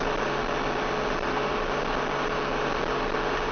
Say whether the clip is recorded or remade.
recorded